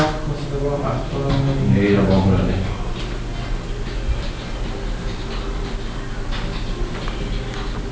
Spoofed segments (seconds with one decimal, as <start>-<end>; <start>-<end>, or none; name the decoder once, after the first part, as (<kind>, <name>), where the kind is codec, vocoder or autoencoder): none